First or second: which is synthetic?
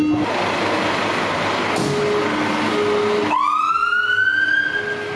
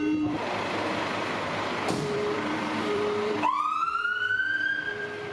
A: second